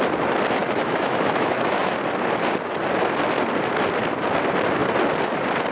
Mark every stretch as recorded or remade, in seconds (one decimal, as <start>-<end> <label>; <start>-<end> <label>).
0.0-0.6 recorded; 0.6-1.9 remade; 1.9-5.7 recorded